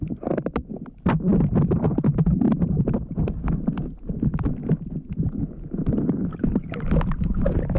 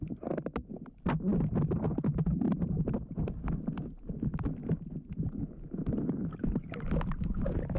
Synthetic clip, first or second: first